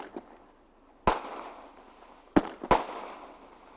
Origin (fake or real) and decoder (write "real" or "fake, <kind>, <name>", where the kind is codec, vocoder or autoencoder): real